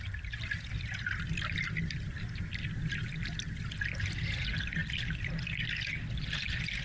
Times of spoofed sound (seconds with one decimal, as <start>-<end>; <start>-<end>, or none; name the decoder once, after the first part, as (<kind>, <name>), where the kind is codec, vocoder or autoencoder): none